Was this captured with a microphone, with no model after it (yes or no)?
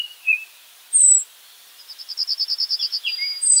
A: yes